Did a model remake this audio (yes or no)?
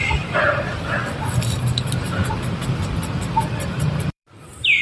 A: yes